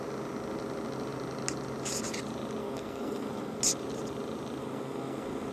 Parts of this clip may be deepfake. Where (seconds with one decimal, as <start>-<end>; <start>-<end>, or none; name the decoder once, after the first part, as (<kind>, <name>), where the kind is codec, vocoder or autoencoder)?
2.6-3.6 (codec, SNAC); 4.6-5.5